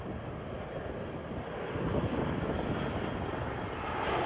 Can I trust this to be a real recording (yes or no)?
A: yes